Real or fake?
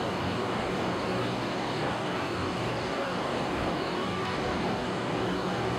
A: fake